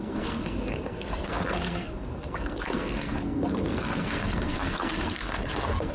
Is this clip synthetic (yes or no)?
yes